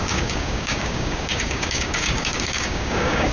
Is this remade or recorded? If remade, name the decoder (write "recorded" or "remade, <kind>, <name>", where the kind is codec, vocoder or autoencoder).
remade, codec, DAC